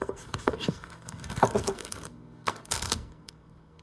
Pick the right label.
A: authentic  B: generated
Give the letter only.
B